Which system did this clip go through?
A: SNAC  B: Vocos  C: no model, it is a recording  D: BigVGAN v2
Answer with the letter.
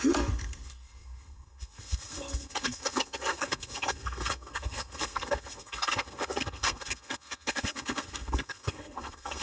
A